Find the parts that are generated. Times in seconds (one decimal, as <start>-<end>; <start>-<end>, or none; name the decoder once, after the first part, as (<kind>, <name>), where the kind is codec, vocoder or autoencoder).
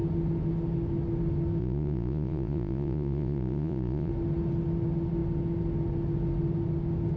1.6-4.1 (vocoder, Vocos)